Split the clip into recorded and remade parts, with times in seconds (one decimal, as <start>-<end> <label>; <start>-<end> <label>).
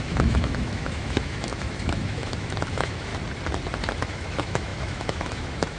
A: 0.0-3.1 remade; 3.1-4.0 recorded; 4.0-5.8 remade